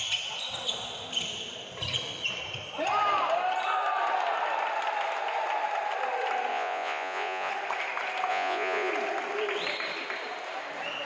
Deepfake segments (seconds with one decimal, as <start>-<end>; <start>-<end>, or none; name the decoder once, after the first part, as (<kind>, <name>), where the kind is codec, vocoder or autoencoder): 6.5-7.5 (vocoder, Vocos); 8.3-8.9